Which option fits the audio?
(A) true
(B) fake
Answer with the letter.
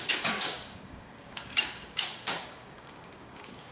B